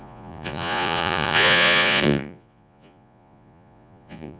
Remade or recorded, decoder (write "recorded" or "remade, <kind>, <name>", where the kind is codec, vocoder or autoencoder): remade, vocoder, Vocos